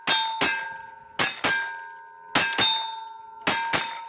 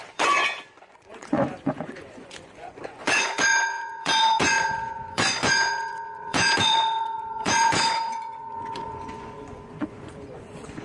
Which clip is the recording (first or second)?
first